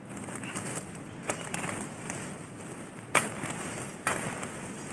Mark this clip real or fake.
real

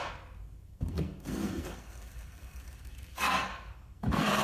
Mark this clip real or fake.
fake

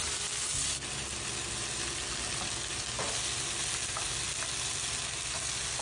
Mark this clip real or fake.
real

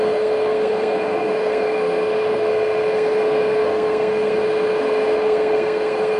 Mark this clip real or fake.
fake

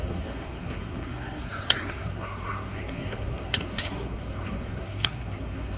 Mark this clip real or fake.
fake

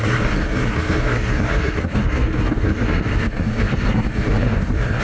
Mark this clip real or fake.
fake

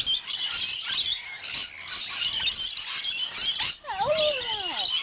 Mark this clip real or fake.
real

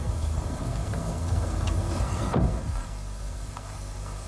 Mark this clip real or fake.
fake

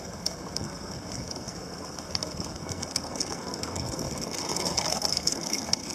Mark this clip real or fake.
fake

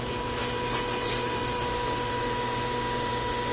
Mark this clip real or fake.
real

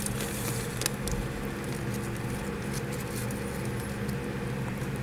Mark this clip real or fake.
real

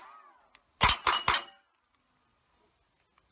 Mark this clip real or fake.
real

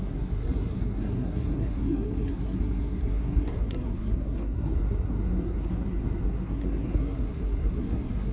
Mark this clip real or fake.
fake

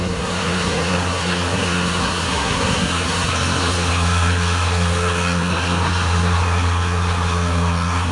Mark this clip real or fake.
fake